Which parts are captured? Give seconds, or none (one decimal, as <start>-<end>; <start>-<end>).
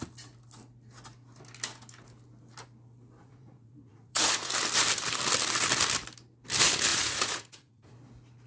0.0-3.2; 4.5-6.9; 7.9-8.5